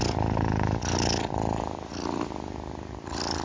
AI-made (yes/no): no